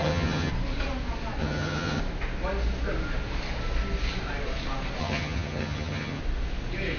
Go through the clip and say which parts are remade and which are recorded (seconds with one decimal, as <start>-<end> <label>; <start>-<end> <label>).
0.0-0.5 remade; 0.5-1.4 recorded; 1.4-2.0 remade; 2.0-5.0 recorded; 5.0-6.2 remade; 6.2-7.0 recorded